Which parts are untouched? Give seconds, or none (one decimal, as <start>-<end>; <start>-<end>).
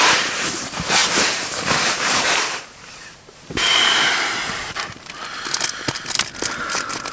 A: 0.0-1.0; 5.1-7.1